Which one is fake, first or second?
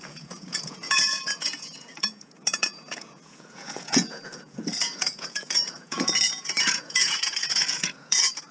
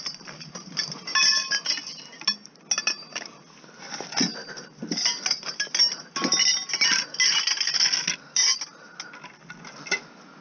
first